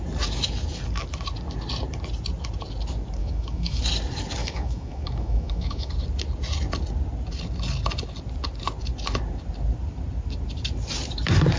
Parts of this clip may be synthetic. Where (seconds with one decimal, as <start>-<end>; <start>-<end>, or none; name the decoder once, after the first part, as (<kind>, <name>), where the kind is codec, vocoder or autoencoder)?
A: 3.2-3.8 (autoencoder, DAC-VAE); 4.4-5.9